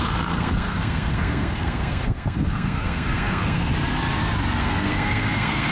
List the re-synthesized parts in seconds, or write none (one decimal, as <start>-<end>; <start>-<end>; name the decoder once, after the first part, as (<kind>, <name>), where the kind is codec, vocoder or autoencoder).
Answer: 0.0-3.7 (codec, SNAC); 4.6-5.7